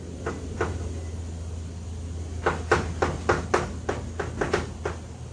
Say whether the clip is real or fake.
real